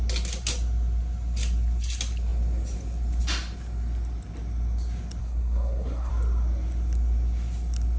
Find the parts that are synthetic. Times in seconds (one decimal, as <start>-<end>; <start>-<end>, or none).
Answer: 5.2-6.1